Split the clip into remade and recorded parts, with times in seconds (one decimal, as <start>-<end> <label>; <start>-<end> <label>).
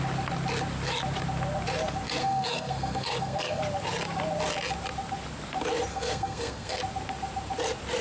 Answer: 0.0-2.2 recorded; 2.2-3.6 remade; 3.6-5.9 recorded; 5.9-6.8 remade; 6.8-8.0 recorded